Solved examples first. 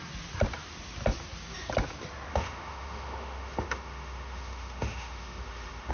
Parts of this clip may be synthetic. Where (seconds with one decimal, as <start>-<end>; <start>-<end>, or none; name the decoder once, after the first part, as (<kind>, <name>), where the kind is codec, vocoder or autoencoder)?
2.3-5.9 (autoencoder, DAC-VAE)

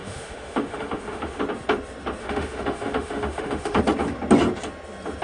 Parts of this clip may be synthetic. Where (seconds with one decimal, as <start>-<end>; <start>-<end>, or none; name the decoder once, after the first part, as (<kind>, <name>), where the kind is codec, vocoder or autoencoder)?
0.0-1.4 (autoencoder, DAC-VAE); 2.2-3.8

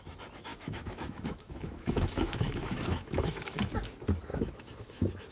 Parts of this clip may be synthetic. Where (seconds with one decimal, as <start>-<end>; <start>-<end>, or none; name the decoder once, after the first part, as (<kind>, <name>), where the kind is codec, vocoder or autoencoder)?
0.5-3.7 (autoencoder, DAC-VAE); 4.3-5.3

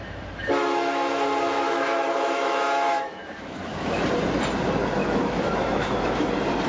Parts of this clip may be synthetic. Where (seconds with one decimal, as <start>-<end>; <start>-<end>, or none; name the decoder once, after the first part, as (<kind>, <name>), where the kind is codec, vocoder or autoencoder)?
0.0-4.0 (autoencoder, DAC-VAE); 5.0-6.3

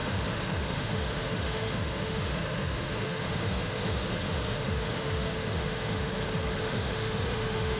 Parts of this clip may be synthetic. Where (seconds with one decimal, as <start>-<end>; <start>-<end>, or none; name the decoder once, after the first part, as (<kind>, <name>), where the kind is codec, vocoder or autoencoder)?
0.0-6.1 (autoencoder, DAC-VAE); 6.6-7.8

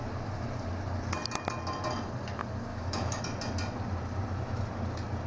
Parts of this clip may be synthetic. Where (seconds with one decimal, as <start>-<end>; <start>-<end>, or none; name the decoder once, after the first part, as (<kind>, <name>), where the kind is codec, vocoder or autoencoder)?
2.7-3.2 (autoencoder, DAC-VAE)

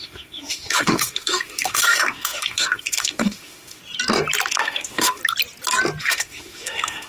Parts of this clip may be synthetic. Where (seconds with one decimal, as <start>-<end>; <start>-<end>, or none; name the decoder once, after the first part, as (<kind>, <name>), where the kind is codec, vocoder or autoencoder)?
0.0-3.8 (autoencoder, DAC-VAE); 4.5-5.2; 6.0-7.1